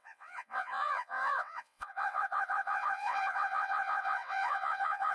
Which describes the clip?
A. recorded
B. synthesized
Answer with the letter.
B